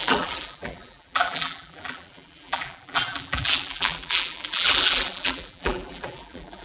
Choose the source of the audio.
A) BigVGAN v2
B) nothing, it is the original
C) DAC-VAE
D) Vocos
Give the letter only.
A